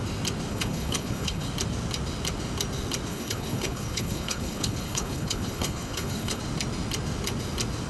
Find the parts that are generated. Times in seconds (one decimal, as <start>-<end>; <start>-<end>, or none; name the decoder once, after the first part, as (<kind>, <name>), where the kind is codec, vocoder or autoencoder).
0.5-1.5 (codec, HILCodec); 3.1-6.4